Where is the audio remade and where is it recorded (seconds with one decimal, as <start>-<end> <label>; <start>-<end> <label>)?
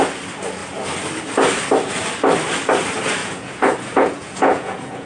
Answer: 0.0-3.2 recorded; 3.2-5.1 remade